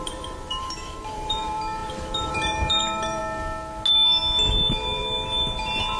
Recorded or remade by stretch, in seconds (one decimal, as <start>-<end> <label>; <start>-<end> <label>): 0.0-3.2 remade; 3.2-4.5 recorded; 4.5-6.0 remade